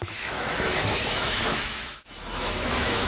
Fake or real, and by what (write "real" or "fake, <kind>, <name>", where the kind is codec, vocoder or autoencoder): fake, autoencoder, DAC-VAE